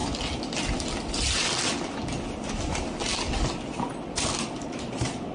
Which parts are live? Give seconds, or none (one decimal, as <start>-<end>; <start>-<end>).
0.0-5.3